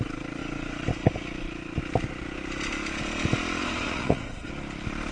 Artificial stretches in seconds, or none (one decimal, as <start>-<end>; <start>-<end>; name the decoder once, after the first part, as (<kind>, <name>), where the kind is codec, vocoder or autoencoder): 3.6-4.5 (vocoder, Vocos)